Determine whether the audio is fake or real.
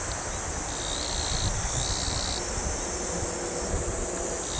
real